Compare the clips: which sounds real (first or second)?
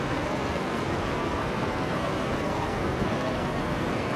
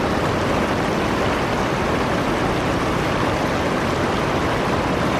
second